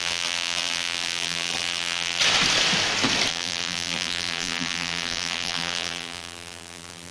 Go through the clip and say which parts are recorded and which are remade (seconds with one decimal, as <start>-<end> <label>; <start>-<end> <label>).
0.0-2.2 remade; 2.2-3.3 recorded; 3.3-7.1 remade